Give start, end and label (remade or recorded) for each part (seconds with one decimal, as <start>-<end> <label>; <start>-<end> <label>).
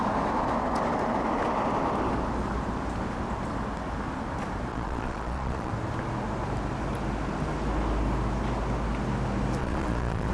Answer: 0.0-4.7 recorded; 4.7-5.7 remade; 5.7-9.6 recorded; 9.6-10.3 remade